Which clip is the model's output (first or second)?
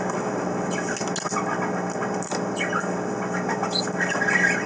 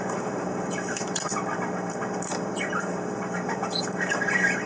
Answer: second